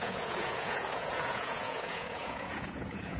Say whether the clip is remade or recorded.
remade